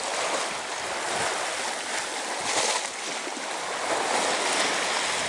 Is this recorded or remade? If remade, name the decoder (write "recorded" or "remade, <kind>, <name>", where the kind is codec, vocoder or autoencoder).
recorded